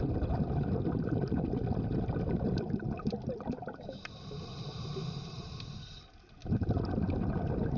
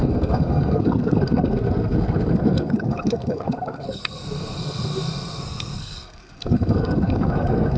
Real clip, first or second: first